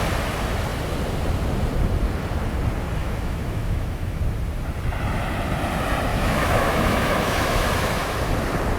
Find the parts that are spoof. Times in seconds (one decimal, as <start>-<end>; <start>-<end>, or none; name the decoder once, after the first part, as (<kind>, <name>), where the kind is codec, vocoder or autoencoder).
3.0-4.2 (autoencoder, DAC-VAE); 6.1-8.3